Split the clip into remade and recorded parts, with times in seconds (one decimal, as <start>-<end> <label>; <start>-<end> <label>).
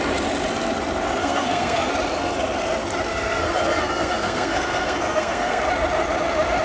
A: 0.0-1.2 recorded; 1.2-1.9 remade; 1.9-3.1 recorded; 3.1-5.6 remade; 5.6-6.6 recorded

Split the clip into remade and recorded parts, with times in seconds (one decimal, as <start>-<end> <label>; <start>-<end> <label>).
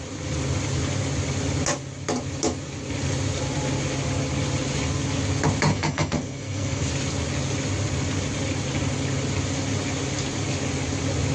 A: 0.0-5.7 recorded; 5.7-6.9 remade; 6.9-11.3 recorded